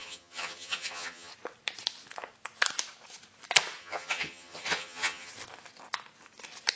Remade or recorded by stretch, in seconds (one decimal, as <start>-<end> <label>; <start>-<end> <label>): 0.0-1.3 remade; 1.3-3.8 recorded; 3.8-5.3 remade; 5.3-6.8 recorded